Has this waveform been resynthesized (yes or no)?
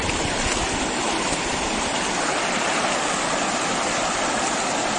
no